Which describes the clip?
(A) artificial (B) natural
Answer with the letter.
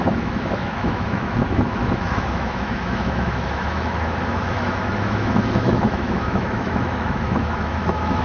A